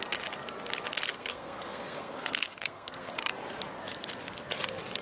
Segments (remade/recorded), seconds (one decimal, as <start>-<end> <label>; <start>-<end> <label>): 0.0-1.1 recorded; 1.1-3.3 remade; 3.3-5.0 recorded

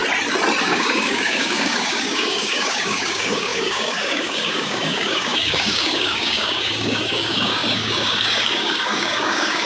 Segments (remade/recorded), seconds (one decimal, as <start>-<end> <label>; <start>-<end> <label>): 0.0-0.6 recorded; 0.6-9.7 remade

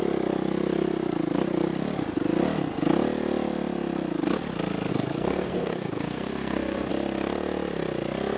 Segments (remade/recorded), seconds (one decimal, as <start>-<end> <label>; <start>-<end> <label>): 0.0-4.9 recorded; 4.9-6.9 remade; 6.9-8.4 recorded

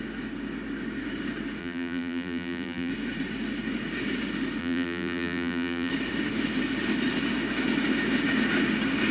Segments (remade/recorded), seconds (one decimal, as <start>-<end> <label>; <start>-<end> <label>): 0.0-1.6 recorded; 1.6-2.9 remade; 2.9-4.6 recorded; 4.6-5.9 remade; 5.9-9.1 recorded

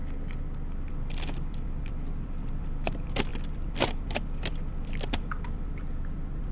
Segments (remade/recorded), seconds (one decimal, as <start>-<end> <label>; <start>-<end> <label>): 0.0-0.9 recorded; 0.9-6.5 remade

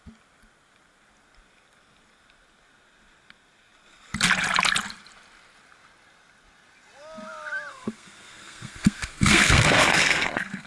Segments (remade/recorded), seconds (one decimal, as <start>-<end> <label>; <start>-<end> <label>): 0.0-7.7 recorded; 7.7-10.7 remade